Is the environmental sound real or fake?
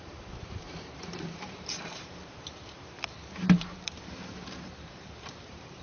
fake